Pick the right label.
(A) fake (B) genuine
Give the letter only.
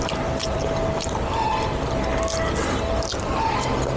B